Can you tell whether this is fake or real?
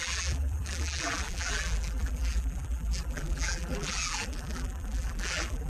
fake